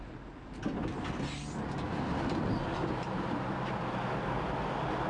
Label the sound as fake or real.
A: real